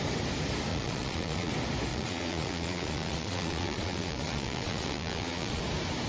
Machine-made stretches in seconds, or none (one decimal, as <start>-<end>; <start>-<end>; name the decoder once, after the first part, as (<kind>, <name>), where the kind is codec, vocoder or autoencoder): 0.7-1.5 (vocoder, Vocos); 1.9-5.6